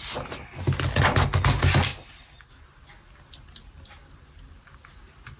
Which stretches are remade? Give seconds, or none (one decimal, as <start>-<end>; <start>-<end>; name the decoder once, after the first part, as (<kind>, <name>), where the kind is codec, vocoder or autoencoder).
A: none